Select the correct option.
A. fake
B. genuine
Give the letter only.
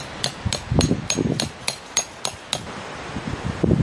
B